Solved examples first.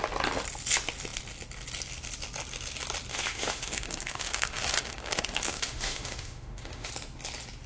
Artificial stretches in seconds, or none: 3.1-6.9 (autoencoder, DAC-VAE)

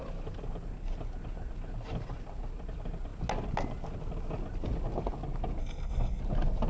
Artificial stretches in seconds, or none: 5.6-6.2 (codec, SNAC)

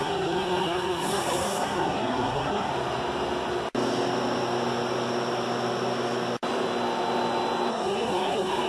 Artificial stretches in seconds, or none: 0.0-2.7 (codec, SNAC); 7.7-8.7

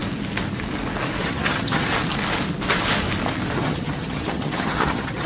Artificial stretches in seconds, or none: 1.2-1.9 (vocoder, HiFi-GAN); 3.6-5.3

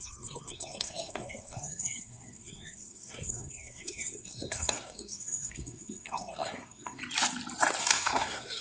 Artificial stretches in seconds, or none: 0.0-7.0 (codec, SNAC); 7.8-8.6

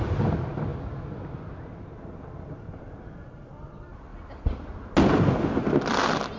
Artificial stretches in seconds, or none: none

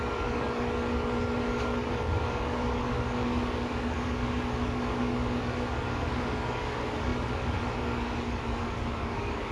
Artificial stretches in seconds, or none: 0.0-9.5 (codec, DAC)

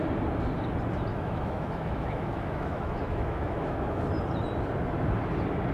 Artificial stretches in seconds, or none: 1.1-4.0 (autoencoder, DAC-VAE)